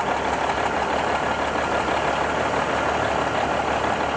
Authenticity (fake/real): real